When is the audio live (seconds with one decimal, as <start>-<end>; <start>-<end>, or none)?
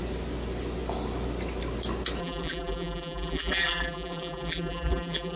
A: 0.0-2.2